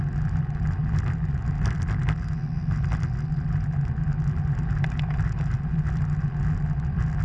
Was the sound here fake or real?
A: real